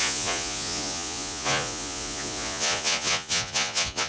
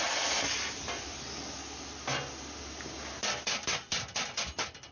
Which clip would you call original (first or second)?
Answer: second